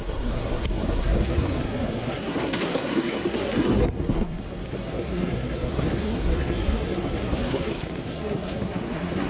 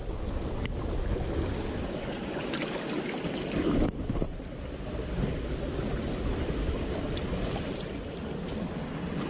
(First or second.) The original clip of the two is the second